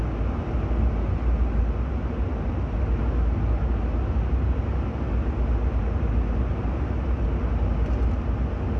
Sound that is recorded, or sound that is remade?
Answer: recorded